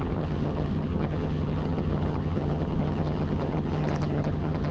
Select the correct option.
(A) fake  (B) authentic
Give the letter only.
A